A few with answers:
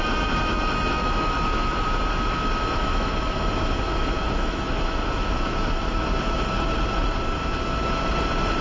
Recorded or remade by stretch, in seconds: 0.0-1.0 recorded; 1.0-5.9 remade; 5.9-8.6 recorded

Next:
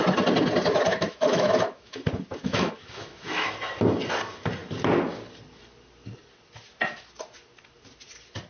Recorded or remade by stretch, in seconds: 0.0-0.9 recorded; 0.9-2.0 remade; 2.0-2.4 recorded; 2.4-3.5 remade; 3.5-8.5 recorded